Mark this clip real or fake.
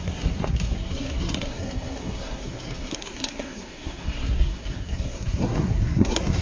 fake